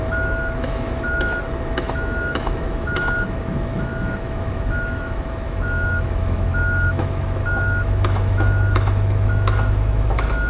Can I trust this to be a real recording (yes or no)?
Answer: no